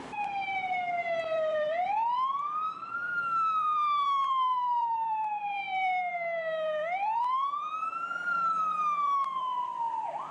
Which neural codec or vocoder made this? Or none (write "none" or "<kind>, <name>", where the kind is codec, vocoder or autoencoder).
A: vocoder, BigVGAN v2